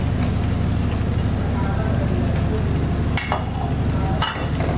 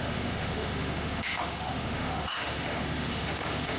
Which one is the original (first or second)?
first